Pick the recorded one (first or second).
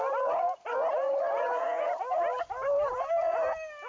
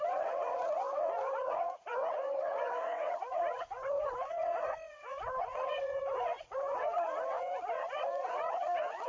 first